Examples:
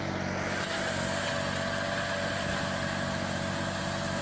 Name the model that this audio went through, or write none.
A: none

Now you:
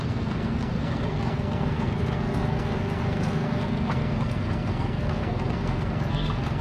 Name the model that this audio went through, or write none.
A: codec, SNAC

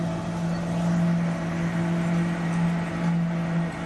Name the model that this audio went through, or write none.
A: none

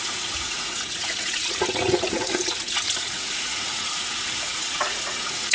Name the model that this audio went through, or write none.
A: vocoder, Vocos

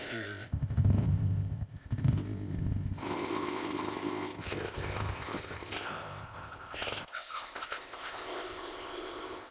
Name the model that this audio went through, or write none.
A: codec, ZipCodec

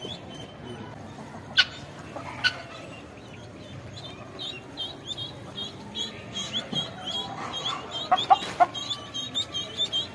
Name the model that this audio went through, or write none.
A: none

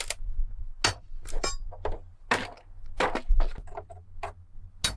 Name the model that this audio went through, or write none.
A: none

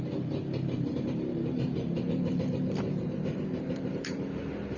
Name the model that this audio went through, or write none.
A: none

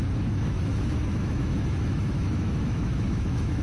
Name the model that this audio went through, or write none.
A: autoencoder, DAC-VAE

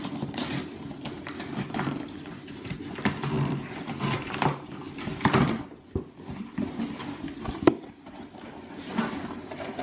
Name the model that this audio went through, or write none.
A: none